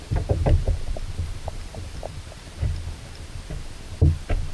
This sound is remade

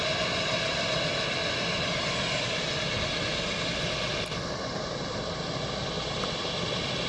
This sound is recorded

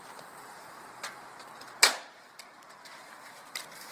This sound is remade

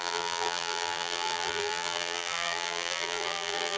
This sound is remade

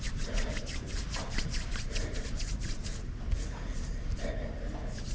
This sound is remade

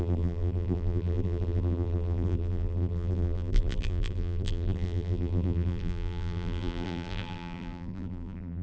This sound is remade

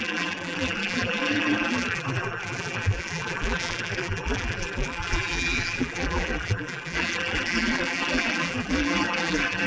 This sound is remade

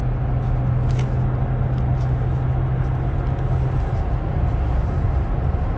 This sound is recorded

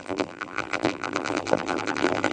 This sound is remade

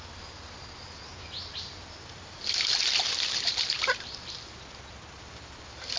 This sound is recorded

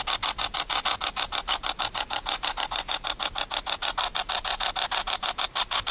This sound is recorded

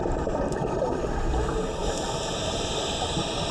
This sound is recorded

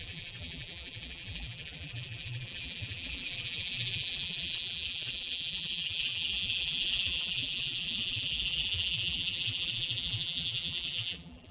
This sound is remade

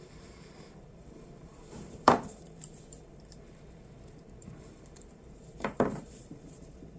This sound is remade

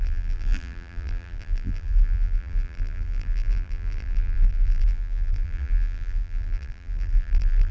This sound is remade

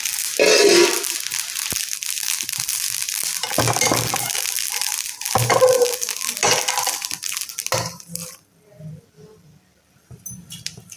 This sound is recorded